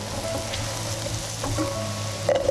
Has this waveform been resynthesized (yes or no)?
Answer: no